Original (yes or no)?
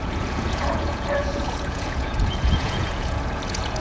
no